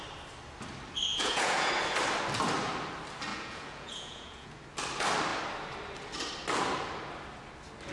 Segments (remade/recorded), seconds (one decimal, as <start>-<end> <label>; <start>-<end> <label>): 0.0-1.1 recorded; 1.1-1.7 remade; 1.7-3.3 recorded; 3.3-4.6 remade; 4.6-7.9 recorded